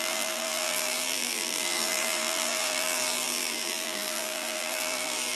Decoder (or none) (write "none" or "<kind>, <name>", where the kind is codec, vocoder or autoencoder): vocoder, BigVGAN v2